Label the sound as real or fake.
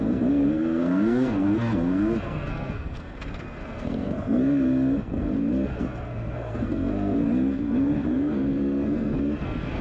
fake